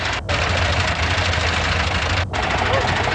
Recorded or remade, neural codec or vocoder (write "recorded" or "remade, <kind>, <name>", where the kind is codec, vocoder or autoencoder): recorded